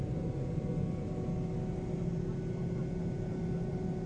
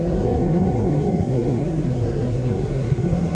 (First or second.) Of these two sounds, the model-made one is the second